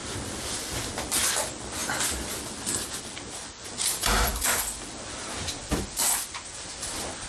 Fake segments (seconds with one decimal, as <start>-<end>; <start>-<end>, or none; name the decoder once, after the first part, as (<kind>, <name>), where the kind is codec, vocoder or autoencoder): none